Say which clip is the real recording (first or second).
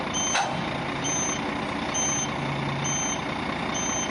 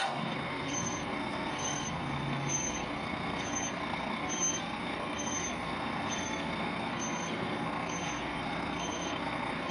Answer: first